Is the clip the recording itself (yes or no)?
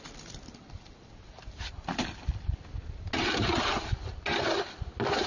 yes